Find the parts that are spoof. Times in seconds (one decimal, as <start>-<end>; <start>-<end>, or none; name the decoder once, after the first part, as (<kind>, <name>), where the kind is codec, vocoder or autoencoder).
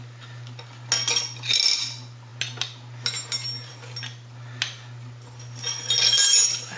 none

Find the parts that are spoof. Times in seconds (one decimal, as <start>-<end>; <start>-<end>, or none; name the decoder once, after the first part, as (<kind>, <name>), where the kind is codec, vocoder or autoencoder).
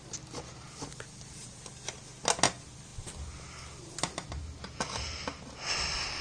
none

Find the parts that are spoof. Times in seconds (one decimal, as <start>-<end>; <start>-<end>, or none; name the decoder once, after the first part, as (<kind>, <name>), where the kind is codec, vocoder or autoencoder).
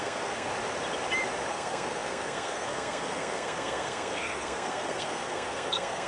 0.0-0.5 (codec, SNAC); 1.5-6.1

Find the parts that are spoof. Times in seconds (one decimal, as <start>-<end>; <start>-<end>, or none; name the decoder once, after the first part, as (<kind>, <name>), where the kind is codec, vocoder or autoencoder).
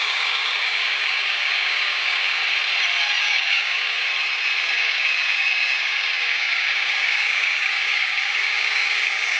0.0-2.4 (codec, DAC); 3.2-4.0; 4.6-9.4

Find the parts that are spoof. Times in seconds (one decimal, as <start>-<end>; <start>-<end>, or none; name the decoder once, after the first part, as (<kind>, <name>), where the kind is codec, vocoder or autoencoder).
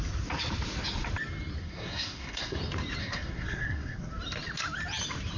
1.6-2.6 (codec, SNAC); 3.0-4.1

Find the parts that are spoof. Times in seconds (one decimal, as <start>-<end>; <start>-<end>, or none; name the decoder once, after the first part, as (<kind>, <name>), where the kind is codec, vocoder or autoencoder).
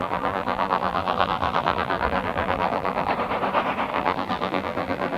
0.0-3.1 (vocoder, BigVGAN v2); 3.9-5.2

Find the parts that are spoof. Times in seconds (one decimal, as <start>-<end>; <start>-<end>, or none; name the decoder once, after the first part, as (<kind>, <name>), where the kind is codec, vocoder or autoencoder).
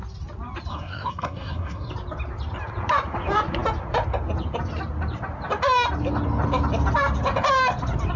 0.7-1.9 (codec, SNAC)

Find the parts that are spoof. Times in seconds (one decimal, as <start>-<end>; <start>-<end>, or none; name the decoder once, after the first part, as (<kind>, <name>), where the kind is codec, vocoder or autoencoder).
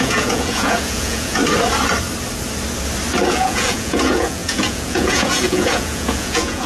0.0-1.4 (vocoder, Vocos); 3.3-6.7